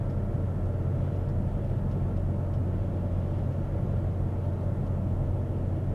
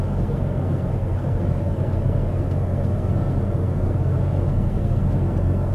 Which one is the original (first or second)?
first